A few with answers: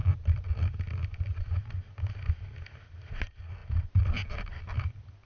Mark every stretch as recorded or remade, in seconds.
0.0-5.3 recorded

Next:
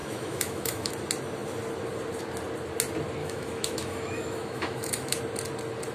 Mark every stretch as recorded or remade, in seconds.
0.0-0.9 remade; 0.9-3.2 recorded; 3.2-5.2 remade; 5.2-5.9 recorded

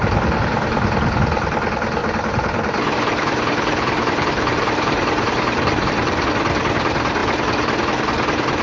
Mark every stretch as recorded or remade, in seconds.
0.0-2.0 recorded; 2.0-6.3 remade; 6.3-8.6 recorded

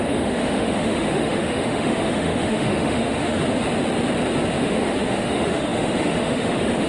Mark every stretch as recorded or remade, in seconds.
0.0-3.4 remade; 3.4-4.6 recorded; 4.6-6.9 remade

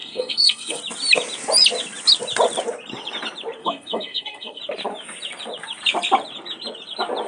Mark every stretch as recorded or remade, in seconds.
0.0-0.8 remade; 0.8-3.6 recorded; 3.6-4.6 remade; 4.6-7.3 recorded